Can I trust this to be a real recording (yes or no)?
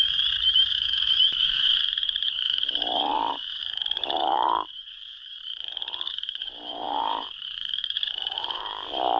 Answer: no